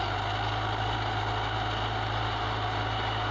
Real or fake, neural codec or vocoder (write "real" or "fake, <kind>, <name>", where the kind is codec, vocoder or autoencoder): real